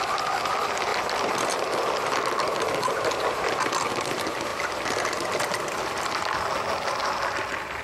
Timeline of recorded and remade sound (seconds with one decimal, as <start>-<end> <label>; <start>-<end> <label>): 0.0-7.8 recorded